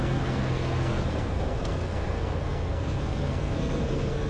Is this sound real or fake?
fake